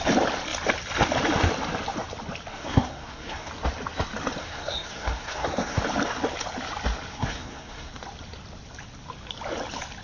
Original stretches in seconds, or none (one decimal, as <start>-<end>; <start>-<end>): 0.0-2.5; 3.5-4.4; 5.8-7.1; 7.9-10.0